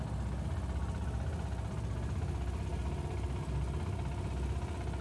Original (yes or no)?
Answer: yes